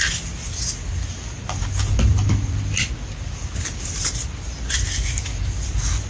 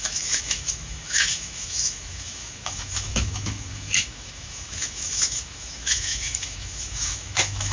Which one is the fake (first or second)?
second